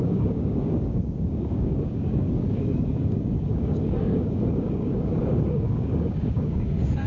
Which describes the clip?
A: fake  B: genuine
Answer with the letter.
A